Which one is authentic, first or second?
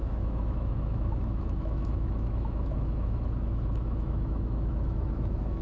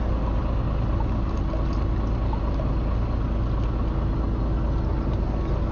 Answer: second